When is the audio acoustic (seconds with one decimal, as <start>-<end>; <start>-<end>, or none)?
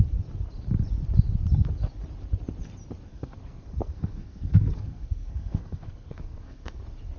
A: 0.0-3.1; 6.8-7.2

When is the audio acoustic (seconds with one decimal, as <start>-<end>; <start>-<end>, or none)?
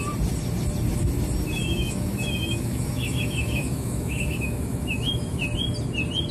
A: 0.0-1.6; 5.4-6.3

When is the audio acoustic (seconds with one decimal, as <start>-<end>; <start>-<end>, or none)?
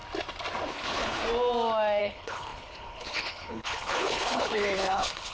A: 0.0-0.7; 1.2-2.0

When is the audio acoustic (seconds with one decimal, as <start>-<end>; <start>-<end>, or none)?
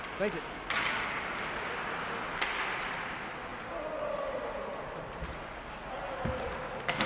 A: 0.0-7.1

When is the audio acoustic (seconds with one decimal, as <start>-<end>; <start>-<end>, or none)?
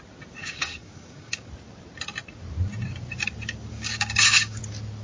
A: 0.0-0.4; 1.5-3.7; 4.6-5.0